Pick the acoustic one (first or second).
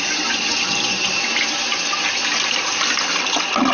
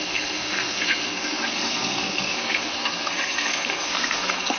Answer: first